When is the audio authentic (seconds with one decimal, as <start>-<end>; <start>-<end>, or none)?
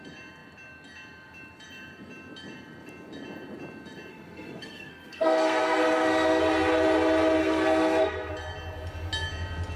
0.0-4.1; 6.4-7.4; 8.3-9.8